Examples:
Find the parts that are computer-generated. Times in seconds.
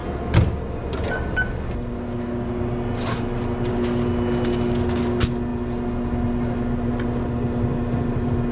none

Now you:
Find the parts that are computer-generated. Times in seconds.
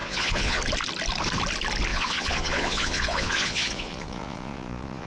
0.0-0.6 (vocoder, Vocos); 1.9-5.1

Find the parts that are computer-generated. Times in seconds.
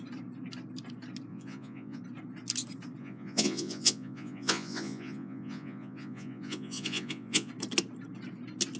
1.3-2.0 (vocoder, Vocos); 3.0-7.5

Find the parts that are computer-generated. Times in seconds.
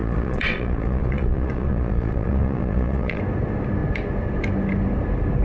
0.0-3.2 (vocoder, Vocos)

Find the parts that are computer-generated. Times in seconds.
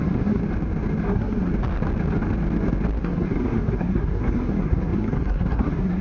0.0-0.4 (codec, SNAC); 1.0-1.5; 3.0-6.0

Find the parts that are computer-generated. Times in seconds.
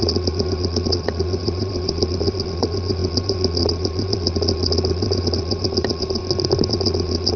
0.0-6.2 (vocoder, Vocos); 6.7-7.4